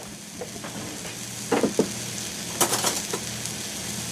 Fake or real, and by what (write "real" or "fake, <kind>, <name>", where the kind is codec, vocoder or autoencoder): real